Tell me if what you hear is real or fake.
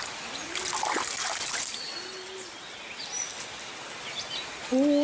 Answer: real